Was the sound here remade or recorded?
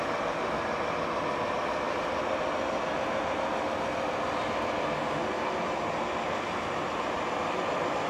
recorded